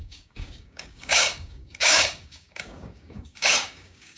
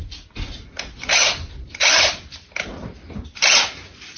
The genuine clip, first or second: second